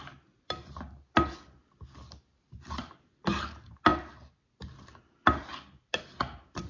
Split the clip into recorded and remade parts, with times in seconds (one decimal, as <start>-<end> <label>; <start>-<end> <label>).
0.0-6.7 recorded